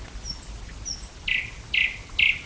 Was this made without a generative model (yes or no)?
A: yes